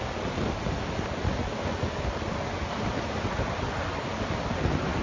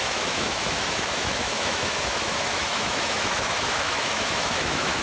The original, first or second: first